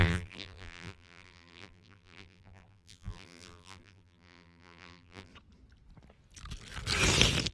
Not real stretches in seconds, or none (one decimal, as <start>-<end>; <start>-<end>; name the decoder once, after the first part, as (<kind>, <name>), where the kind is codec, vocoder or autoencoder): 0.0-5.3 (vocoder, BigVGAN v2)